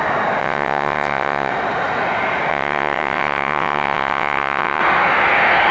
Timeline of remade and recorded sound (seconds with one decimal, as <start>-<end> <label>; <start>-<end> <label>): 0.0-0.4 recorded; 0.4-1.5 remade; 1.5-2.5 recorded; 2.5-4.8 remade; 4.8-5.7 recorded